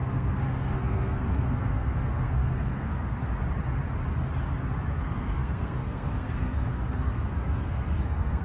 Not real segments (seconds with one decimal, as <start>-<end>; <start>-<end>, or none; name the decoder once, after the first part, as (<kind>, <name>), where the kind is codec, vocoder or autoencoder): 0.0-3.3 (codec, SNAC); 4.9-8.4